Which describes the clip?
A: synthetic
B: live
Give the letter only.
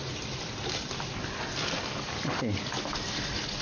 B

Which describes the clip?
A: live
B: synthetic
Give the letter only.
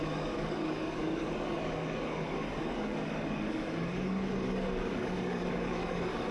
B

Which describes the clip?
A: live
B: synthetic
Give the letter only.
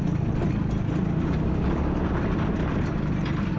A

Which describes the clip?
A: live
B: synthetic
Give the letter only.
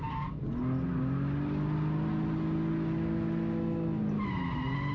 A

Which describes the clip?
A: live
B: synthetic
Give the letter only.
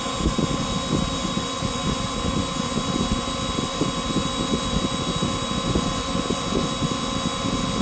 A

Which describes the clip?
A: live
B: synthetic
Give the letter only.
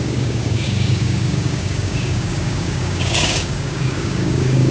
B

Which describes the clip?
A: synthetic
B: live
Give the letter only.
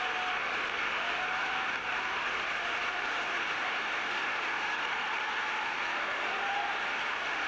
B